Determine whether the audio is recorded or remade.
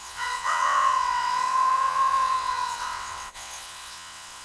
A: remade